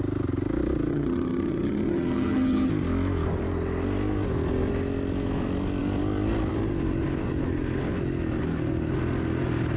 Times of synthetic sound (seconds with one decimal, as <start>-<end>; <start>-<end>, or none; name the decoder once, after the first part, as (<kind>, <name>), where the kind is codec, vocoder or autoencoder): 0.9-2.7 (vocoder, HiFi-GAN)